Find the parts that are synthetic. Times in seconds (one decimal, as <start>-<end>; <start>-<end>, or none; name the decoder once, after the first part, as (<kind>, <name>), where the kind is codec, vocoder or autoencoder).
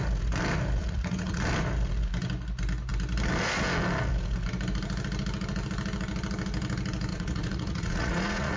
0.8-1.4 (vocoder, Vocos); 7.1-8.6